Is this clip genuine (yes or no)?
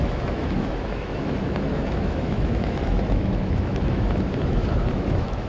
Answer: no